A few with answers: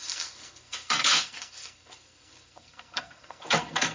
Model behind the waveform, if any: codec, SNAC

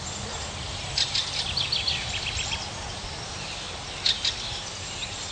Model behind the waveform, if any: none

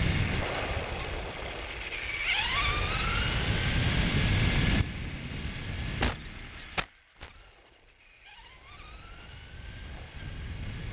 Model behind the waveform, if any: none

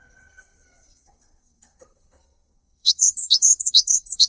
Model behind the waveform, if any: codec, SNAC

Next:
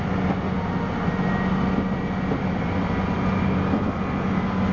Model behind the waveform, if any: none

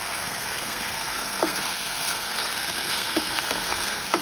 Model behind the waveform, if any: codec, SNAC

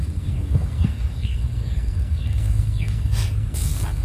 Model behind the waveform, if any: codec, SNAC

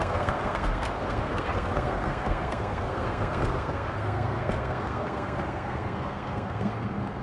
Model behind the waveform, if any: codec, SNAC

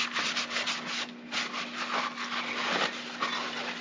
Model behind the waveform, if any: none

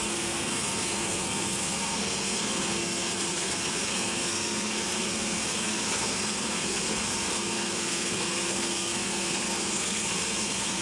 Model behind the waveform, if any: codec, SNAC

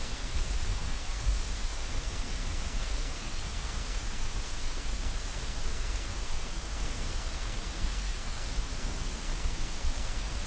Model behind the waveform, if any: codec, SNAC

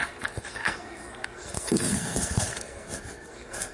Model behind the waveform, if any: codec, SNAC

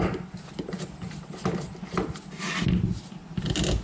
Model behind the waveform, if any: none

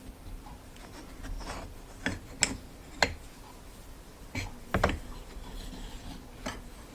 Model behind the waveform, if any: none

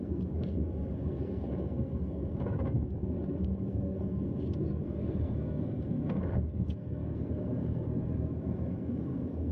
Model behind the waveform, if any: codec, SNAC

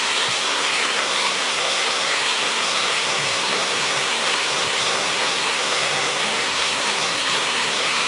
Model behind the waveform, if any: codec, SNAC